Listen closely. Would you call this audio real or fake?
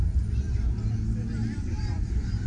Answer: fake